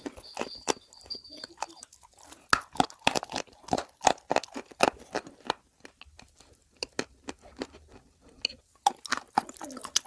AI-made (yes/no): no